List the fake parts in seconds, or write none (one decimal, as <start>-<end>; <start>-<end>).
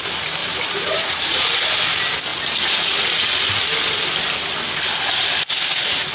0.4-1.4